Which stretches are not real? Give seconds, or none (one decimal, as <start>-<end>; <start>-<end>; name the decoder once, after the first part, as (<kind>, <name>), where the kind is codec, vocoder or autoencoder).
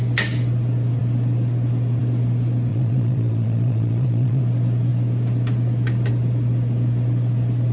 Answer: 2.7-4.4 (vocoder, Vocos)